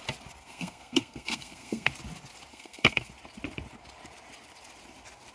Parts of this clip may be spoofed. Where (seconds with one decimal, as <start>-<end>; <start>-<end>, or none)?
0.4-1.9; 2.5-3.1